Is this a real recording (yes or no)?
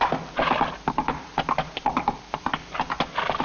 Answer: yes